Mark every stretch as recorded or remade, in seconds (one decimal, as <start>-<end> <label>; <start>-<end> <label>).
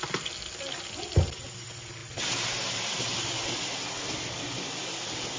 0.0-5.4 recorded